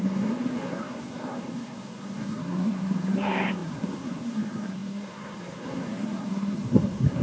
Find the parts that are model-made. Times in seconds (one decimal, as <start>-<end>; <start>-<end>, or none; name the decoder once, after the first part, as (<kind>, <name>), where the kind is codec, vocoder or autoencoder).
0.0-7.2 (codec, SNAC)